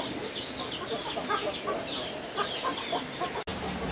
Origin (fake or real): real